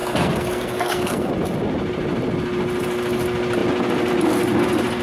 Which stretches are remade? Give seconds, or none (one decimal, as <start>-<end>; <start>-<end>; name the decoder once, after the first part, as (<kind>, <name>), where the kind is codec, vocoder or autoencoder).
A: 0.0-1.3 (codec, SNAC)